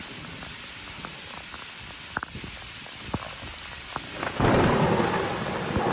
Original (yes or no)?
yes